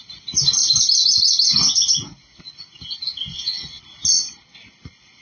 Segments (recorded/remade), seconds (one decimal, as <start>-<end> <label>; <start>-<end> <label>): 0.0-3.3 recorded; 3.3-3.8 remade; 3.8-5.2 recorded